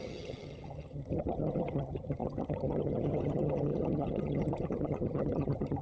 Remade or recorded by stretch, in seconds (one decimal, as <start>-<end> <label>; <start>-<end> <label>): 0.0-5.8 remade